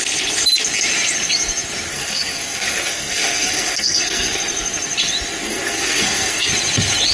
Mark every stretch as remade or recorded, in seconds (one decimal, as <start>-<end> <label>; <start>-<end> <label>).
0.0-1.9 recorded; 1.9-4.4 remade; 4.4-5.4 recorded; 5.4-6.5 remade; 6.5-7.1 recorded